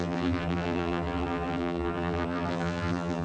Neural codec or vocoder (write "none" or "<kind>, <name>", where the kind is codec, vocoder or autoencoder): vocoder, BigVGAN v2